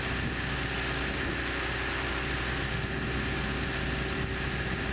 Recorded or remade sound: recorded